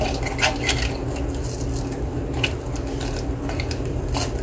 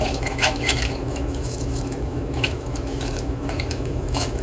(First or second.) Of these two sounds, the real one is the first